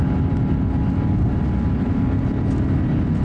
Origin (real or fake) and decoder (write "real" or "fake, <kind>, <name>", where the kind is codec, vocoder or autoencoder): real